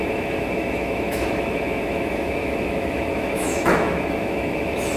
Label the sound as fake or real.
fake